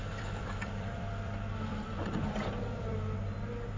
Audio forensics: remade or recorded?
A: remade